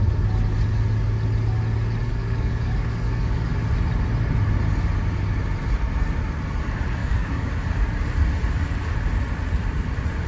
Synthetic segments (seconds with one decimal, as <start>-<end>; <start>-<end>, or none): 2.0-3.5; 7.0-7.5